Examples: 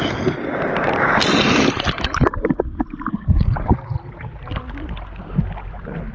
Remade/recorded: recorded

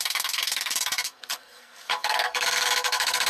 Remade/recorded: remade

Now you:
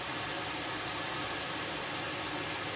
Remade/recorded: recorded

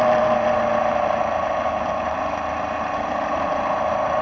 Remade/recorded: recorded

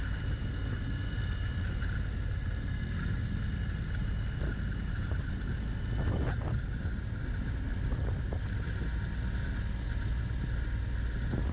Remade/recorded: recorded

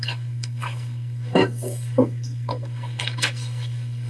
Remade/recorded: remade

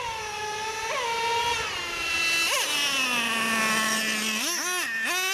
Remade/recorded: recorded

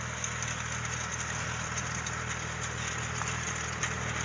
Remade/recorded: recorded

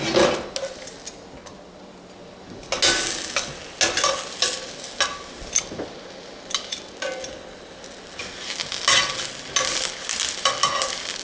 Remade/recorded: recorded